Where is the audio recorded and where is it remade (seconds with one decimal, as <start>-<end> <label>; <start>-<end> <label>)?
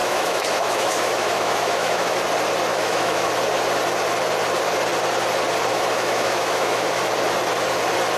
0.0-2.2 remade; 2.2-2.7 recorded; 2.7-3.3 remade; 3.3-5.7 recorded; 5.7-7.0 remade; 7.0-8.2 recorded